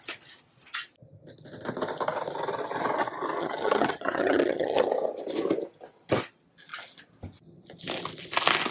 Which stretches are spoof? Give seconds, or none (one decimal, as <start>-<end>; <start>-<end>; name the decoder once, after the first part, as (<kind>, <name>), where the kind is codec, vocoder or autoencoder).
3.4-4.9 (vocoder, HiFi-GAN)